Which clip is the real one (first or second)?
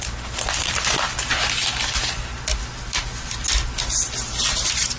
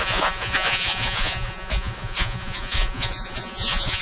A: first